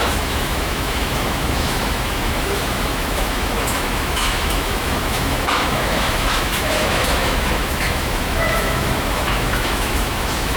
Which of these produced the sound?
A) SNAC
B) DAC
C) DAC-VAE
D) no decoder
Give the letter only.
C